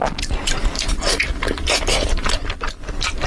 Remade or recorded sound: recorded